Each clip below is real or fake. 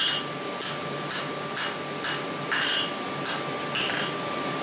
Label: real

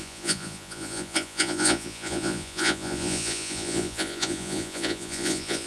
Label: fake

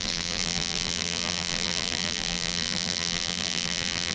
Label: fake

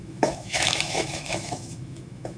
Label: fake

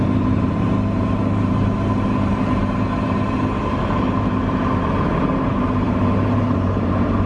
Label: fake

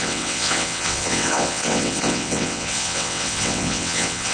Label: fake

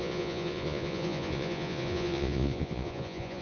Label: fake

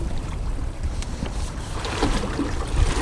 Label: real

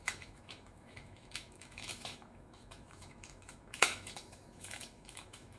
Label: fake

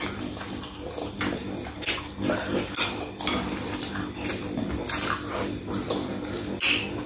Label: real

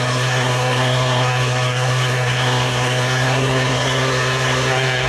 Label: fake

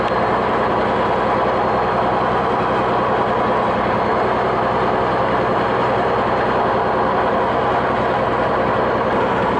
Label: real